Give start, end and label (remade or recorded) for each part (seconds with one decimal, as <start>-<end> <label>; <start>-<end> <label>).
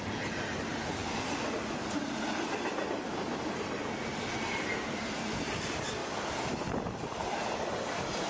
0.0-8.3 recorded